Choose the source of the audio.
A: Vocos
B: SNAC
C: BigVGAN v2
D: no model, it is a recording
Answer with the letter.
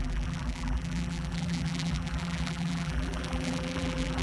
C